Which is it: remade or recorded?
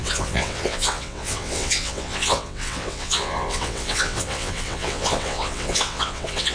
remade